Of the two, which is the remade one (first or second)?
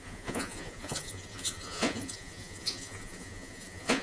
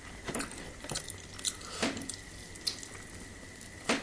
first